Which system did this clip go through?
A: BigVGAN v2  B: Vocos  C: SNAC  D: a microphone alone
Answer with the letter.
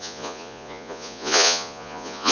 B